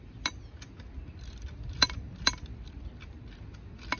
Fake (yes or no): no